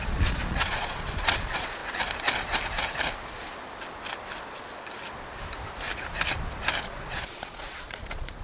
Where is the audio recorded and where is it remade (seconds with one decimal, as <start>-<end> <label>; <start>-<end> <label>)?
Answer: 0.0-1.8 remade; 1.8-6.8 recorded; 6.8-8.4 remade